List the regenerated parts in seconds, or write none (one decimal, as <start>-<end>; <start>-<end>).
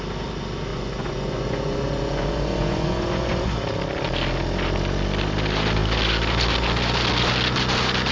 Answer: 0.7-3.5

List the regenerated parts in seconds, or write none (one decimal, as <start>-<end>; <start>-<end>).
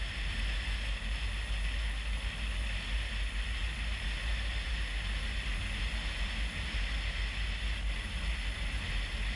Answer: none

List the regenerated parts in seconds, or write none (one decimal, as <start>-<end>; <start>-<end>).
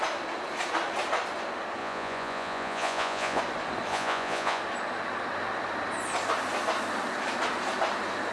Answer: 1.8-3.4; 3.9-4.6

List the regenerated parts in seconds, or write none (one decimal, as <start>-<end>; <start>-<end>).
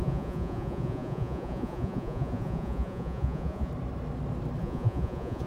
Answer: 0.0-3.7; 4.6-5.5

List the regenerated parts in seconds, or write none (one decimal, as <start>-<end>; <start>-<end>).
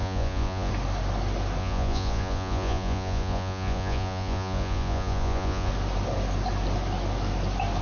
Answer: 0.0-0.7; 1.6-5.7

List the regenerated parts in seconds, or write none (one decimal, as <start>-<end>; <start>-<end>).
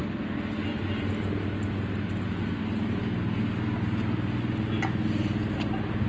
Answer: none